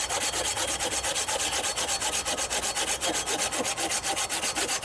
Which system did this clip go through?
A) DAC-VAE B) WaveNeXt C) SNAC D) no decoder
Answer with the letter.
D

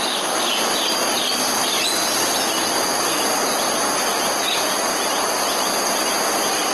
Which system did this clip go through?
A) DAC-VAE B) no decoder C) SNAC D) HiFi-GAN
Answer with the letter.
B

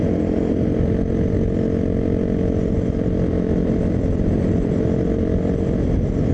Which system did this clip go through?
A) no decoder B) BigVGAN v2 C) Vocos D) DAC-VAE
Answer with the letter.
A